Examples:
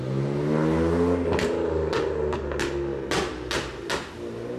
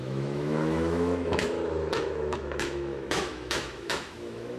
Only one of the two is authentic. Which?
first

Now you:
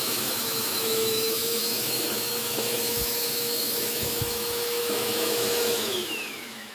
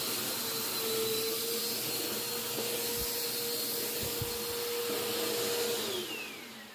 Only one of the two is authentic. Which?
second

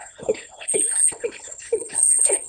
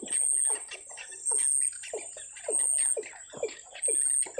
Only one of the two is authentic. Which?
second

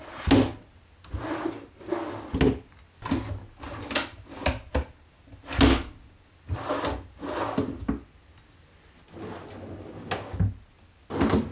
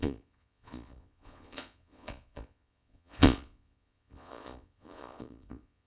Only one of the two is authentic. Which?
first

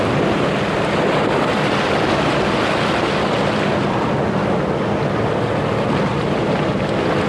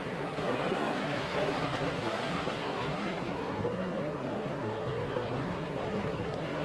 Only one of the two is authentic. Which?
first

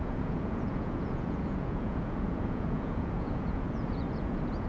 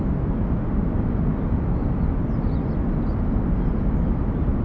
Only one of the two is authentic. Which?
second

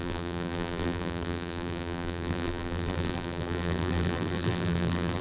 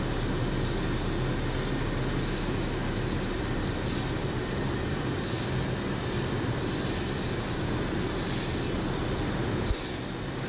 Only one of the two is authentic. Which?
second